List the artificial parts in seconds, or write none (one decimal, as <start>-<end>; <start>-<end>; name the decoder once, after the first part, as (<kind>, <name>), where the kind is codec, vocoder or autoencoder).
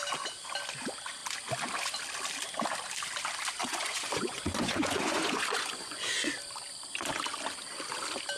3.6-6.3 (vocoder, Vocos)